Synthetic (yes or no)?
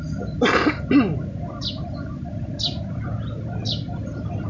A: no